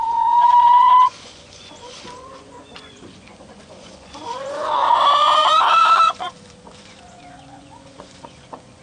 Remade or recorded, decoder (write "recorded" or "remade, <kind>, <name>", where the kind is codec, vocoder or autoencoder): remade, vocoder, Vocos